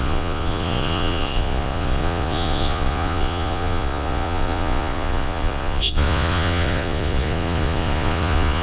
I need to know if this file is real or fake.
fake